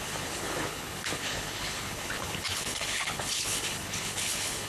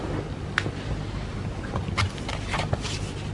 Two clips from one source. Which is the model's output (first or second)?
first